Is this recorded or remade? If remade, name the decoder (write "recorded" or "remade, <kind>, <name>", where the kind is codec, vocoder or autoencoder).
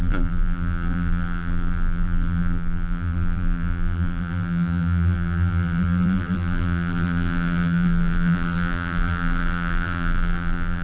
remade, vocoder, BigVGAN v2